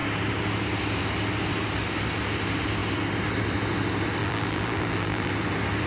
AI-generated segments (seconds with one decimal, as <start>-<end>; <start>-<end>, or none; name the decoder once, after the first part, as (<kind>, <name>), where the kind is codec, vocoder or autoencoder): 4.2-5.3 (vocoder, BigVGAN v2)